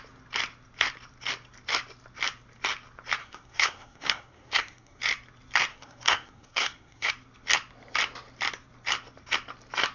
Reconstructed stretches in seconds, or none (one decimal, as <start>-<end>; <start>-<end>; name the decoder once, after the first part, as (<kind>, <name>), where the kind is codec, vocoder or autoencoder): 3.2-5.0 (codec, SNAC); 5.7-7.1